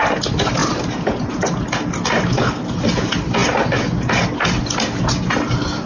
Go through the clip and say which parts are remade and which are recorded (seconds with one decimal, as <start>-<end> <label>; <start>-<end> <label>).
0.0-5.9 recorded